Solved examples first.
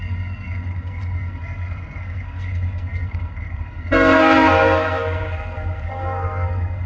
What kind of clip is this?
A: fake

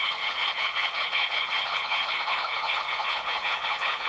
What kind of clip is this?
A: fake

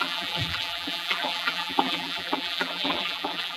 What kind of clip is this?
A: fake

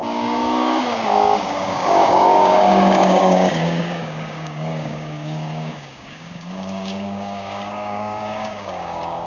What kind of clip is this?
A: fake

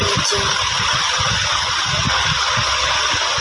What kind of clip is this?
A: real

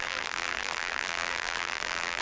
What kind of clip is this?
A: fake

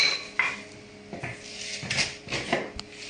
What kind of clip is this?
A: real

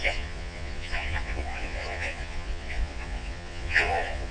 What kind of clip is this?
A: fake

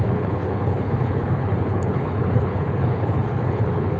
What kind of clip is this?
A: fake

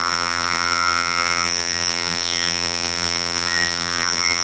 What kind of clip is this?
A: fake